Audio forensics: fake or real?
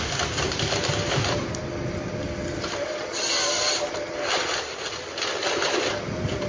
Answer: real